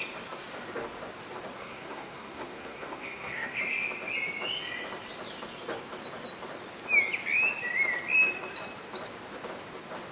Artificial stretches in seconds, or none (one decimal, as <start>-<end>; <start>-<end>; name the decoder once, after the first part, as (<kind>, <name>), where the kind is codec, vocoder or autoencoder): 1.6-3.6 (codec, SNAC)